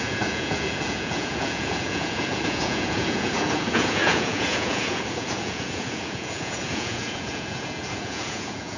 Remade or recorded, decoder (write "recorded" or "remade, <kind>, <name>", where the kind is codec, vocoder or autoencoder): remade, vocoder, Vocos